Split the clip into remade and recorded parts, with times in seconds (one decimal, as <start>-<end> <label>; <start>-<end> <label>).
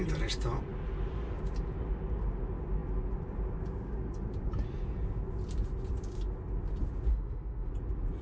0.0-7.1 recorded; 7.1-7.7 remade; 7.7-8.2 recorded